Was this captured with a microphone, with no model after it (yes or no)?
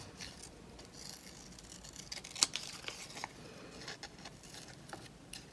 yes